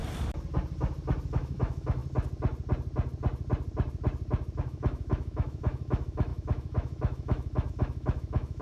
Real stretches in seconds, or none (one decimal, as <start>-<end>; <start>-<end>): 0.0-1.3; 2.0-4.6